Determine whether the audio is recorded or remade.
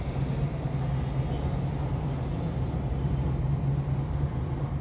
recorded